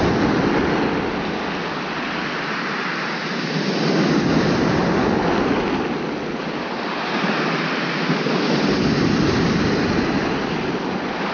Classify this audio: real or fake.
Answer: real